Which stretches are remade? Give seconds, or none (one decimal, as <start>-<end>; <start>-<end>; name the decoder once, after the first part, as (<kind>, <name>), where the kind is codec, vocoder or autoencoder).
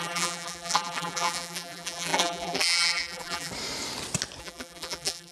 0.0-3.5 (vocoder, BigVGAN v2); 4.4-5.3